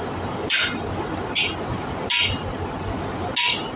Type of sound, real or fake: real